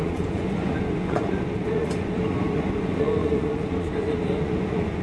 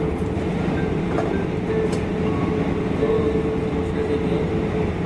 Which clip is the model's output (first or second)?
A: first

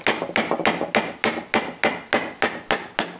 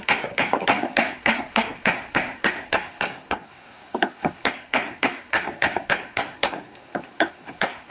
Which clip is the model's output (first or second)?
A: second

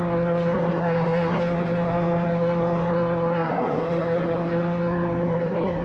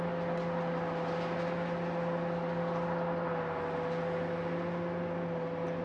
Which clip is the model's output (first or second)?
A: first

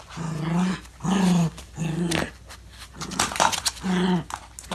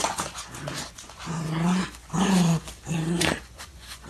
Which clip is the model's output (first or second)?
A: second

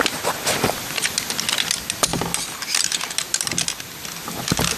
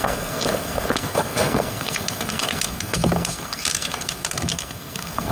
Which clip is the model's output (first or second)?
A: second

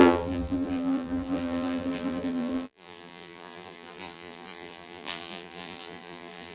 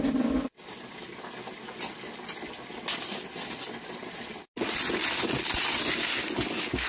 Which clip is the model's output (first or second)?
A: first